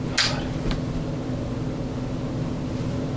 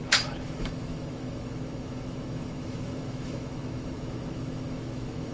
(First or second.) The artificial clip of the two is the second